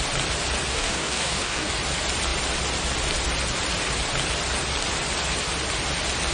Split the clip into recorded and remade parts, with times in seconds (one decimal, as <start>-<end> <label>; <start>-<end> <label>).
0.0-0.7 recorded; 0.7-1.7 remade; 1.7-6.3 recorded